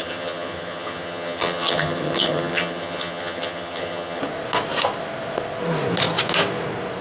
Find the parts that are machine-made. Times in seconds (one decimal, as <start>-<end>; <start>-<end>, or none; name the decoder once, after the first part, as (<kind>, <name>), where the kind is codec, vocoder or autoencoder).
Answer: 0.0-4.2 (vocoder, HiFi-GAN)